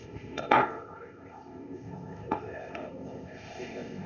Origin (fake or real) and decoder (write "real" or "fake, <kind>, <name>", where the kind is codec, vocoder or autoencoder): fake, codec, ZipCodec